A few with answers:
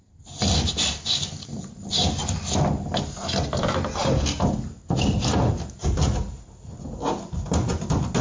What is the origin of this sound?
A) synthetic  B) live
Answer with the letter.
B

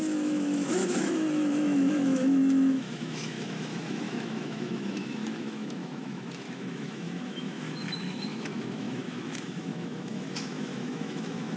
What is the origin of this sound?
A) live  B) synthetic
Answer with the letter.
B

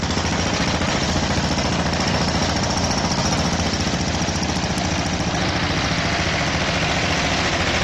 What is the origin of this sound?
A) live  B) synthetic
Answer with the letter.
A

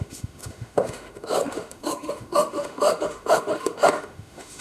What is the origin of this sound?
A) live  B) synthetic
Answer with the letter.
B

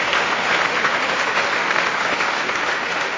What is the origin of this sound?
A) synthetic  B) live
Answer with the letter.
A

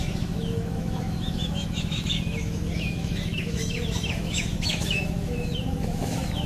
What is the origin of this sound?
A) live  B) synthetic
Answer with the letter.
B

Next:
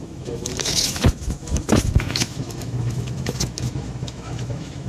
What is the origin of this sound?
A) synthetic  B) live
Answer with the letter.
A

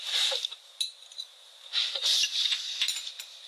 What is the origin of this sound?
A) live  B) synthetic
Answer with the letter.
A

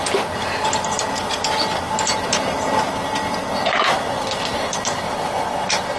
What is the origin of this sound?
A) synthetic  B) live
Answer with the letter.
B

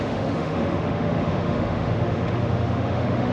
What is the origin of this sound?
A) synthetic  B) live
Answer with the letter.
A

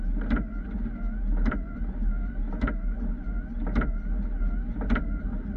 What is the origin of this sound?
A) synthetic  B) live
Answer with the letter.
B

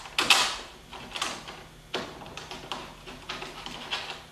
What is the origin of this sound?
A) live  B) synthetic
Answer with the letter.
A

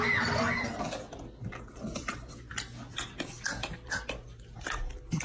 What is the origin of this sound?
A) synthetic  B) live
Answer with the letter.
B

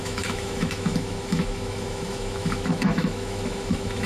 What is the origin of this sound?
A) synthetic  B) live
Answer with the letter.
A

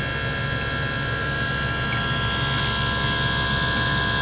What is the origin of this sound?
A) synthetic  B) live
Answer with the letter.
B